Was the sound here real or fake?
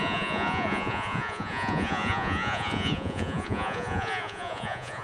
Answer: fake